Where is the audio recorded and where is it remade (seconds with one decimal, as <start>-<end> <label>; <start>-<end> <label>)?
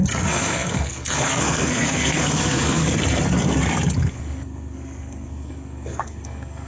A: 0.0-2.8 remade; 2.8-4.1 recorded; 4.1-6.7 remade